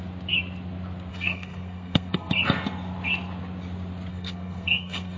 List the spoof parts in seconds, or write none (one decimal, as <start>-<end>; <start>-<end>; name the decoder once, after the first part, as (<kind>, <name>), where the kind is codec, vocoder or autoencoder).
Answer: 1.1-2.3 (codec, SNAC); 4.1-5.2